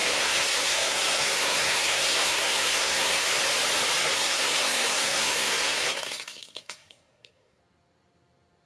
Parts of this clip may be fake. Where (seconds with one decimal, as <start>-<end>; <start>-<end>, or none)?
0.0-3.4; 4.0-7.6